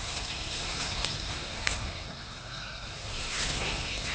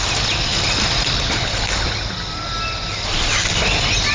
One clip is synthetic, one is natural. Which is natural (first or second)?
second